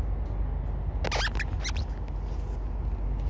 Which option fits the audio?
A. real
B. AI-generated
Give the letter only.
A